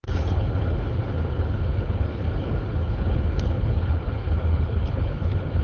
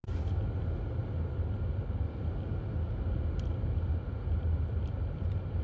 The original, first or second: second